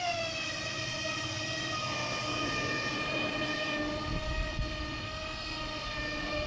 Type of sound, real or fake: real